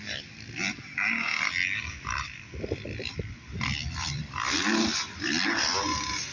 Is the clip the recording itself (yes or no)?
yes